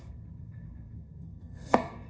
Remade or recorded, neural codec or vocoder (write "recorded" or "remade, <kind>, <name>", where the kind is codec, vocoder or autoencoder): remade, codec, SNAC